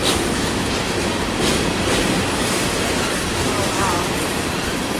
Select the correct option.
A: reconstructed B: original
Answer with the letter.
A